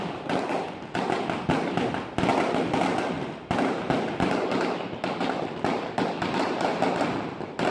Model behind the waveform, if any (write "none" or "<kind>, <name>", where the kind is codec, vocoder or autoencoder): none